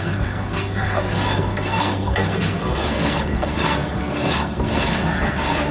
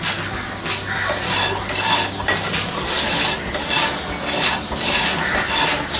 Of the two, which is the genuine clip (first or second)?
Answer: second